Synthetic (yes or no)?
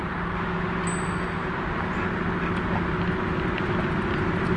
no